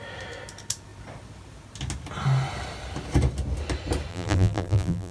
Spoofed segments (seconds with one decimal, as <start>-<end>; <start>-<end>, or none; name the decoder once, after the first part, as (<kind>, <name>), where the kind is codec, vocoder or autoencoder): 4.1-5.1 (vocoder, BigVGAN v2)

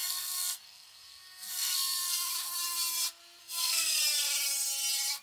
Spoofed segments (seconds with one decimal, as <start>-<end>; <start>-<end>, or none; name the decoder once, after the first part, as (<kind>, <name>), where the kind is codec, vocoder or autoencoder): 0.0-2.3 (codec, SNAC); 3.4-4.0

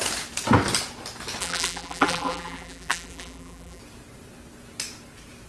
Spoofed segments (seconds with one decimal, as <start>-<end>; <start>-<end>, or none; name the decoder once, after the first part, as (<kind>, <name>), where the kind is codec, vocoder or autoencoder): 1.4-3.8 (vocoder, BigVGAN v2)

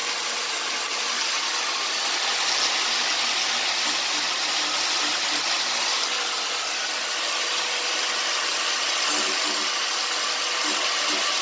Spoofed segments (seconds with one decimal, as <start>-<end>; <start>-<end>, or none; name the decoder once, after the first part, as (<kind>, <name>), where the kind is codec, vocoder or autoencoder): none

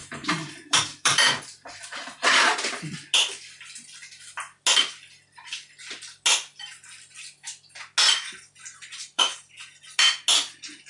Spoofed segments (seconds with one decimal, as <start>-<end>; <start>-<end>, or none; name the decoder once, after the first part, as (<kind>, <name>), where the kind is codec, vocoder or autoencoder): 0.0-1.4 (vocoder, BigVGAN v2); 9.0-9.8

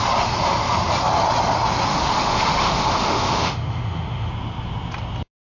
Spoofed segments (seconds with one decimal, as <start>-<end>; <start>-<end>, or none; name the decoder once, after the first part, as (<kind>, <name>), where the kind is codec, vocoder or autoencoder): 1.9-4.3 (autoencoder, DAC-VAE)

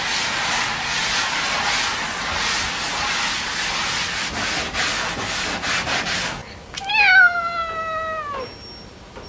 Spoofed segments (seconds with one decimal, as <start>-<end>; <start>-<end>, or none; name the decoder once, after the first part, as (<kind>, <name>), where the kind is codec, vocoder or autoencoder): none

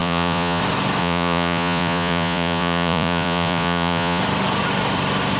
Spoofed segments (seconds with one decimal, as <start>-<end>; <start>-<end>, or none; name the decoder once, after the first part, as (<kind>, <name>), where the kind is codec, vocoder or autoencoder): 0.0-0.6 (vocoder, Vocos); 1.0-4.2